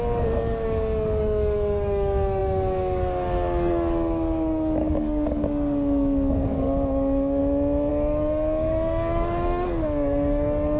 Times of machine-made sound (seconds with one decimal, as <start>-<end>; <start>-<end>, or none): 0.0-7.4; 7.9-10.8